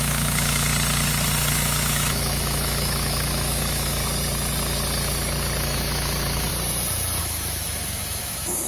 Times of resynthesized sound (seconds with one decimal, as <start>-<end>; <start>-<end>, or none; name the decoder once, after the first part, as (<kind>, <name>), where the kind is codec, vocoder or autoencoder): 0.0-0.7 (autoencoder, DAC-VAE); 1.5-4.0; 5.6-6.5; 7.2-8.7

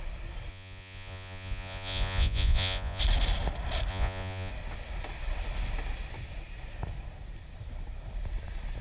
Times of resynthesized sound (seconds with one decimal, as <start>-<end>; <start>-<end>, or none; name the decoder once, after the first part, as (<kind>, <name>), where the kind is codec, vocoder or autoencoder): 0.5-3.0 (vocoder, Vocos); 3.9-4.5

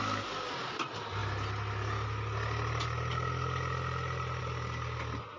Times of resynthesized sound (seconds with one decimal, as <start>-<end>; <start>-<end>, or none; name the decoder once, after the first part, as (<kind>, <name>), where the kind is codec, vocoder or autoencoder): none

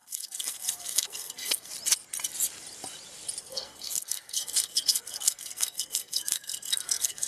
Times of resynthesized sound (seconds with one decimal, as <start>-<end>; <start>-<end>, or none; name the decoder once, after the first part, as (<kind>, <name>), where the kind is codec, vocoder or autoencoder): 0.0-1.7 (codec, SNAC); 3.4-7.3

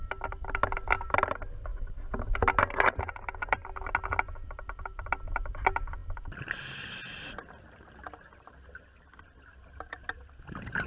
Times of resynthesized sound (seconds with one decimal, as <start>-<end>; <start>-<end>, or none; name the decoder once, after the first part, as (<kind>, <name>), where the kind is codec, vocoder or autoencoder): none

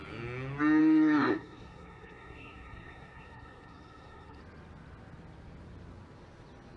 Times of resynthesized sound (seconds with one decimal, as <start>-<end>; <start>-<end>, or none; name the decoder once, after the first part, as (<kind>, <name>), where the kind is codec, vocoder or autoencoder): 0.8-4.4 (codec, SNAC)

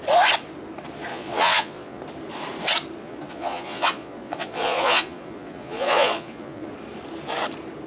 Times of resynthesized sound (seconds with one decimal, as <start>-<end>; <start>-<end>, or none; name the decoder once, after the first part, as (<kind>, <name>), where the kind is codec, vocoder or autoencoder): 1.1-2.0 (vocoder, Vocos); 3.0-6.7